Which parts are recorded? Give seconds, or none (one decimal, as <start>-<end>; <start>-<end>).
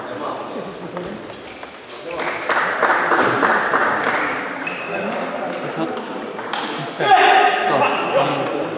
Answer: 0.0-3.8; 5.3-8.8